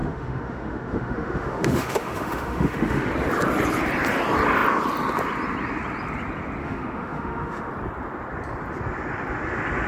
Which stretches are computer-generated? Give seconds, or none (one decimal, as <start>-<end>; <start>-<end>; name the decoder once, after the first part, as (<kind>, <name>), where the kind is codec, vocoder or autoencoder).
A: 0.0-3.1 (autoencoder, DAC-VAE); 6.6-7.7